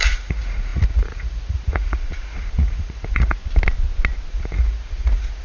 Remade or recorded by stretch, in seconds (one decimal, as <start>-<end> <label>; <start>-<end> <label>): 0.0-3.4 remade; 3.4-4.3 recorded; 4.3-5.4 remade